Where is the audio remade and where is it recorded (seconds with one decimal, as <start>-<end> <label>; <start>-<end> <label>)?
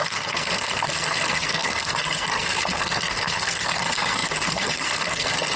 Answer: 0.0-5.6 remade